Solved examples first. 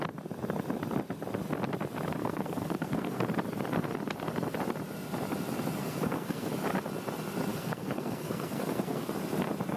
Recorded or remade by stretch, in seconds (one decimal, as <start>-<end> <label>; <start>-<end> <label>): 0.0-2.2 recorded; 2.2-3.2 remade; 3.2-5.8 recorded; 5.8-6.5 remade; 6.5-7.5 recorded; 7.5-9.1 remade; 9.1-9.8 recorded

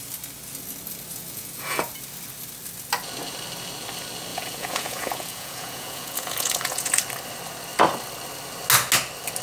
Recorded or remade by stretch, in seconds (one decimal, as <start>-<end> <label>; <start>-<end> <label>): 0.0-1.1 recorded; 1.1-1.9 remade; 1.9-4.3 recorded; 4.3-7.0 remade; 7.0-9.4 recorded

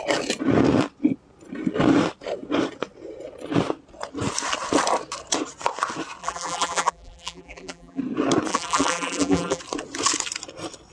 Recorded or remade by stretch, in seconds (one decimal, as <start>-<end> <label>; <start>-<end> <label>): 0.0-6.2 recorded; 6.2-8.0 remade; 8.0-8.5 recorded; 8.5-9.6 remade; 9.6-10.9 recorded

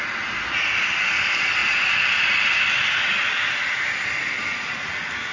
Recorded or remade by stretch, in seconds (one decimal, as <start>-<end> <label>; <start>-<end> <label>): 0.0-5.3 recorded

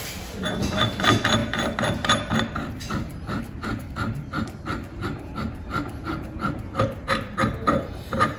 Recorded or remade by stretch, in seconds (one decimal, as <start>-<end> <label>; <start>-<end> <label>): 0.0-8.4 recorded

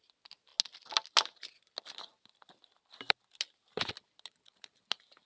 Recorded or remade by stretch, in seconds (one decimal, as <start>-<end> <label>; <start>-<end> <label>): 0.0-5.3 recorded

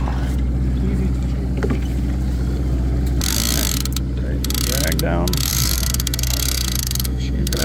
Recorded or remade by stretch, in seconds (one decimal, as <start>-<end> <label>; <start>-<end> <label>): 0.0-5.5 recorded; 5.5-7.6 remade

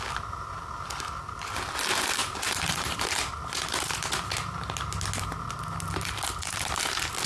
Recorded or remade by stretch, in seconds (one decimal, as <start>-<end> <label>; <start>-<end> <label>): 0.0-2.2 recorded; 2.2-3.3 remade; 3.3-7.3 recorded